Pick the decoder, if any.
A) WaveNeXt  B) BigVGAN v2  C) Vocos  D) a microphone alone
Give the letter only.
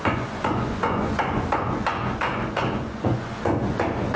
C